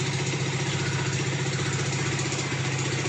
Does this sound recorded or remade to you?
recorded